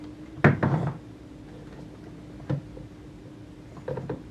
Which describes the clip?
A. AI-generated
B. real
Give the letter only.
B